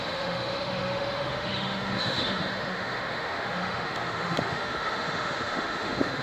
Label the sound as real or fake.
fake